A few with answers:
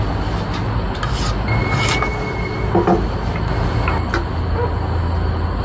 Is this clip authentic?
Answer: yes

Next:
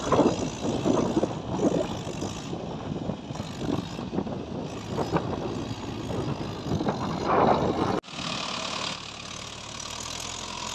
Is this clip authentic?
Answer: yes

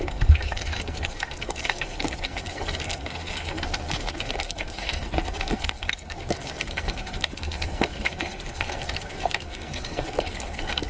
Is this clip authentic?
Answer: no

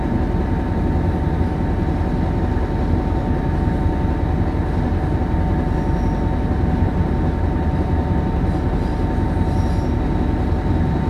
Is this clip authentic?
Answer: yes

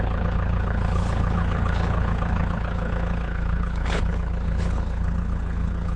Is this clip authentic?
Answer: no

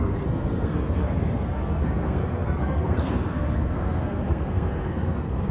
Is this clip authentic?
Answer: no